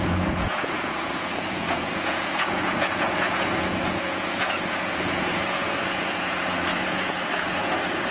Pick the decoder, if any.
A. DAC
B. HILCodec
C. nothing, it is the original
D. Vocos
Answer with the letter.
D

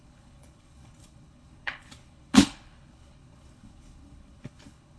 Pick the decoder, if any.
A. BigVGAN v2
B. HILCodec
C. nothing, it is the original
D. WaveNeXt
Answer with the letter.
B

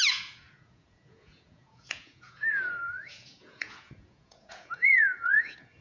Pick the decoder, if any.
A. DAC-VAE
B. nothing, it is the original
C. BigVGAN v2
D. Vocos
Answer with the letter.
D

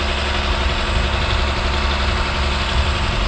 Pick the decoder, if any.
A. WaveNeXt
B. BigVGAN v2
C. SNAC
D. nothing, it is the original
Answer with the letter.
D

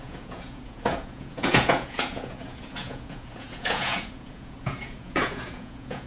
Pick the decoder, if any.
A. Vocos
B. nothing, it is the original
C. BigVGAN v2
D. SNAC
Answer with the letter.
A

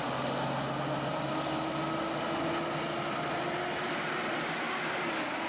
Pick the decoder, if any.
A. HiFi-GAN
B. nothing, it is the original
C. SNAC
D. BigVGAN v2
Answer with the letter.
B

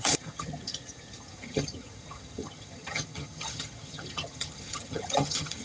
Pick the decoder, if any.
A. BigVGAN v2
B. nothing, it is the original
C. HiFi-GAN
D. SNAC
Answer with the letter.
C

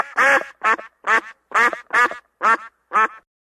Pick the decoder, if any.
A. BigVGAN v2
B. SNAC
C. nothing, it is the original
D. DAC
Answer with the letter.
C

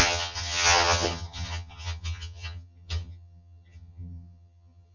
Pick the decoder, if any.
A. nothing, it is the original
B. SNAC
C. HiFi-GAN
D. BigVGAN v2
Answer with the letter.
C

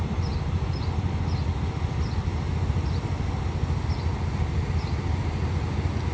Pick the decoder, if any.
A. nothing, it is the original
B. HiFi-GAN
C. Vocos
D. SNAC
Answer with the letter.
A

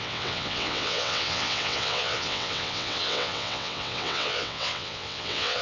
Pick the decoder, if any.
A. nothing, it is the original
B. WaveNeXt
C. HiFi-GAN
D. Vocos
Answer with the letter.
B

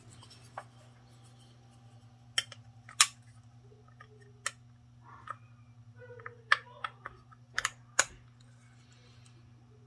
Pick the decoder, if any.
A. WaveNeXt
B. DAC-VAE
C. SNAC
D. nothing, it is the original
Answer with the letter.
D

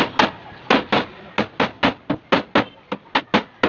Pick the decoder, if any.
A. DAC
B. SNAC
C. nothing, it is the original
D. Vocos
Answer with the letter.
C